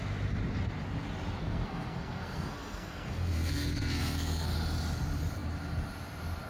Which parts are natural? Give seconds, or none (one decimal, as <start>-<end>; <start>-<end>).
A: 0.0-1.4; 4.5-6.5